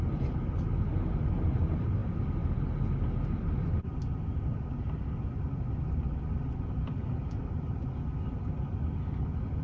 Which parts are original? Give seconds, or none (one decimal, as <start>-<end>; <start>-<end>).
0.0-9.6